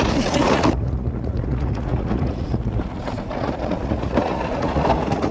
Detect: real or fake fake